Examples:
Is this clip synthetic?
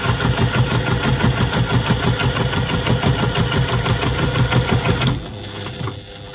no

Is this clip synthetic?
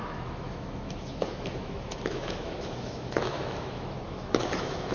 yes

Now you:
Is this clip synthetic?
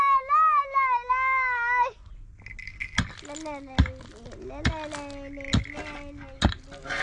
no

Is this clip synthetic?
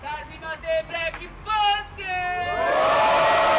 no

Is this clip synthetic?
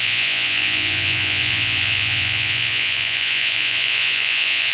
yes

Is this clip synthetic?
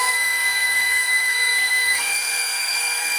yes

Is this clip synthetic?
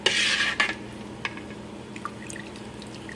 no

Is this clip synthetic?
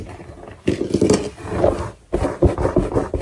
no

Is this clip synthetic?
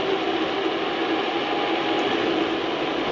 no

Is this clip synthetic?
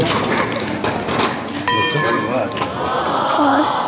no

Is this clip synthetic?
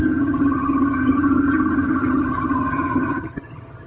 yes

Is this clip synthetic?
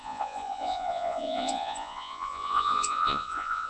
yes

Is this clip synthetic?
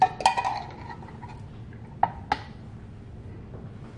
no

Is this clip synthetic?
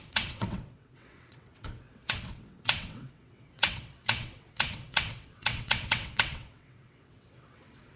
yes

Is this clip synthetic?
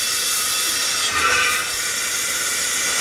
no